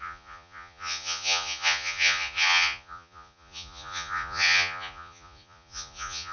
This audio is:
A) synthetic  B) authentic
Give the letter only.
A